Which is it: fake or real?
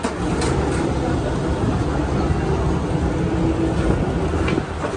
real